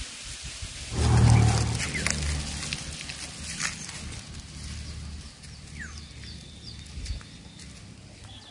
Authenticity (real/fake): real